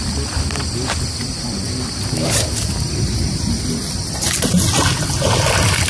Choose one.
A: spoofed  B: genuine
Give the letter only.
B